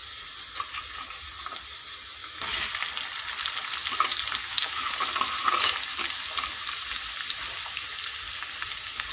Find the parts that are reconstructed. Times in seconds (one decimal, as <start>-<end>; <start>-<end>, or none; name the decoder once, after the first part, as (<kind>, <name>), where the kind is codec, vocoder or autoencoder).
2.2-2.7 (autoencoder, DAC-VAE); 4.4-4.9

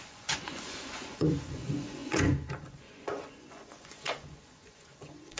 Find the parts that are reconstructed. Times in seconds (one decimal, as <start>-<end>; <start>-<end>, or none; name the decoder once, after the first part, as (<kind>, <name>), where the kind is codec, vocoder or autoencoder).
0.0-5.4 (vocoder, Vocos)

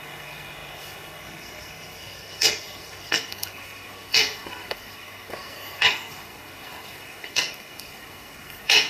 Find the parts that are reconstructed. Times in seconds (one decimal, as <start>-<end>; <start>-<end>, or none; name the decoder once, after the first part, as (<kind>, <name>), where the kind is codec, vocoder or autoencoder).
0.0-8.9 (codec, SNAC)

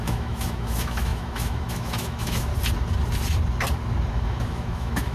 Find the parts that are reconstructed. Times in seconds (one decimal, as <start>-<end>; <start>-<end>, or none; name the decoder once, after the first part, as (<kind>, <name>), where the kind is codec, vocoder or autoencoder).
0.0-2.5 (autoencoder, DAC-VAE); 4.1-5.1

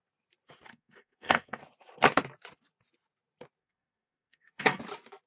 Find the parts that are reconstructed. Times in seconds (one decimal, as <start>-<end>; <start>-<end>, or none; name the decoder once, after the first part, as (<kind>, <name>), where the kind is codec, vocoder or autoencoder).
0.7-1.6 (codec, SNAC); 3.6-4.8

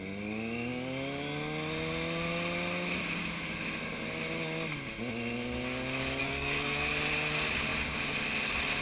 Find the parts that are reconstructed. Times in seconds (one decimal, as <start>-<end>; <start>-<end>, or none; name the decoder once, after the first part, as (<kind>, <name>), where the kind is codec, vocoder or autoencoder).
6.2-6.9 (codec, SNAC)

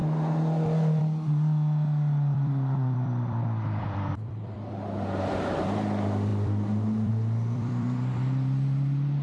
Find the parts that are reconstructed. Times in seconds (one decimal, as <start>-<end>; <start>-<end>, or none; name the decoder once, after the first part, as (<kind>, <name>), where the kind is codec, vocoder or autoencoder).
1.0-9.2 (vocoder, BigVGAN v2)

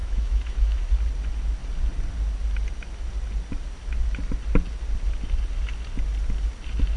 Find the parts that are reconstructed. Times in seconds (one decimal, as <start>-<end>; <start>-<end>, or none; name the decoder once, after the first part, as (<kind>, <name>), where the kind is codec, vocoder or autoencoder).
0.0-0.8 (autoencoder, DAC-VAE)